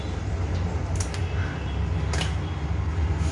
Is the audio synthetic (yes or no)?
no